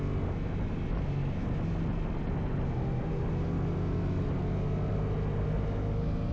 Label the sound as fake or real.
real